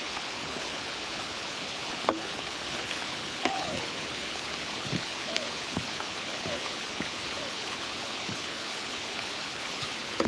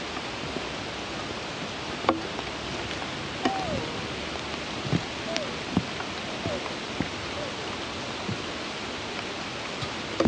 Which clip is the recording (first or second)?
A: second